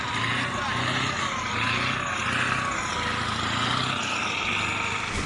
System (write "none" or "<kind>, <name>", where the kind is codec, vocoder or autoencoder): none